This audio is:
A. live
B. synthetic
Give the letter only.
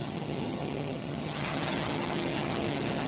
B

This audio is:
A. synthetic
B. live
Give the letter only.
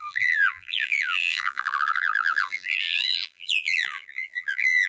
A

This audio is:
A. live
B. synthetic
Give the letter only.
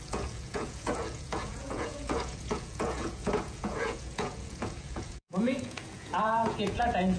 B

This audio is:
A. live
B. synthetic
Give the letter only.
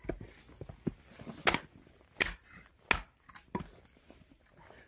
A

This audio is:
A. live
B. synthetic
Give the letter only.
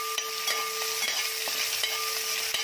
A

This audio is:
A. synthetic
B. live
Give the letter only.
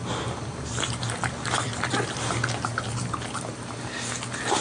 B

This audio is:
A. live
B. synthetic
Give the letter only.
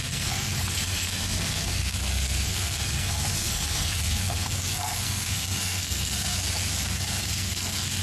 B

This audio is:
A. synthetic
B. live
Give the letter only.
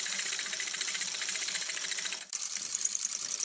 A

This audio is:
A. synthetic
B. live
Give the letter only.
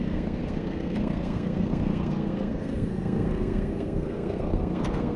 A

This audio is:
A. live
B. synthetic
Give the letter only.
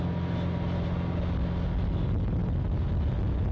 A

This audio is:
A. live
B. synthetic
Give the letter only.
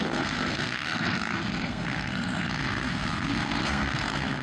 B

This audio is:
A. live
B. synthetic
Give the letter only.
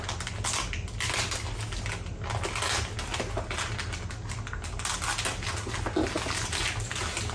A